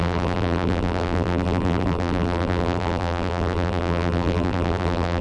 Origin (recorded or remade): remade